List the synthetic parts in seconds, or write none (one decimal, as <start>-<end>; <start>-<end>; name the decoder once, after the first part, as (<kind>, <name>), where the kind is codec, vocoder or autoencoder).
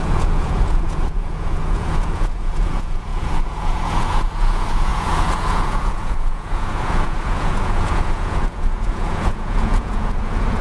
0.0-10.6 (vocoder, Vocos)